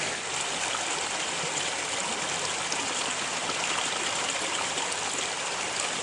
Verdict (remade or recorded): recorded